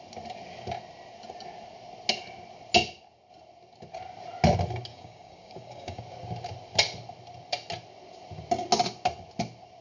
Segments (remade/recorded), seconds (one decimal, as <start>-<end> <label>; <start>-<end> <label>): 0.0-4.9 recorded; 4.9-6.0 remade; 6.0-9.8 recorded